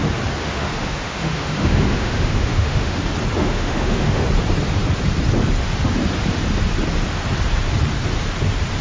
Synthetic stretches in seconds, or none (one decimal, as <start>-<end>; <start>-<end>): 0.4-3.0; 3.4-4.2